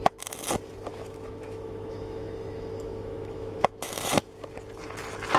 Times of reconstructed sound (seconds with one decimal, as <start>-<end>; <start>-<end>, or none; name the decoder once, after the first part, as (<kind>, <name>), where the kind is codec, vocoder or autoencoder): 0.9-4.1 (autoencoder, DAC-VAE)